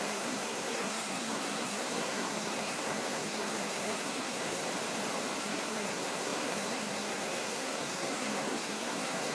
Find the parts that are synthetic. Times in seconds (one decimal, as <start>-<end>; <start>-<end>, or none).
0.0-4.6; 5.4-9.3